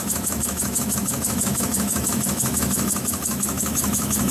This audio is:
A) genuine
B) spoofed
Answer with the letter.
B